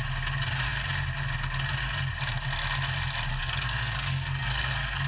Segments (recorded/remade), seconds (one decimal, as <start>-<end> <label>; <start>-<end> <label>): 0.0-3.3 recorded; 3.3-5.1 remade

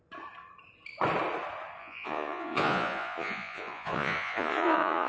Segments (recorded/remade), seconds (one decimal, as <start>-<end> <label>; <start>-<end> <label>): 0.0-1.8 recorded; 1.8-5.1 remade

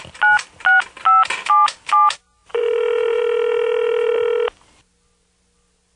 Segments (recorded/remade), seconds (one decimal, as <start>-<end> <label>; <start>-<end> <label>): 0.0-2.4 recorded; 2.4-4.1 remade; 4.1-6.0 recorded

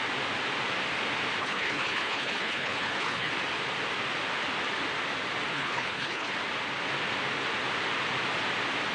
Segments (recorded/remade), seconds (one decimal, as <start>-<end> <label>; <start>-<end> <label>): 0.0-1.4 recorded; 1.4-3.3 remade; 3.3-5.5 recorded; 5.5-6.3 remade; 6.3-8.9 recorded